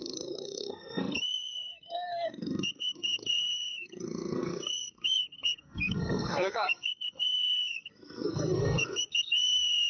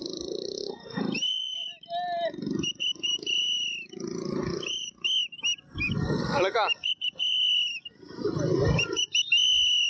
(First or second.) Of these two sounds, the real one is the second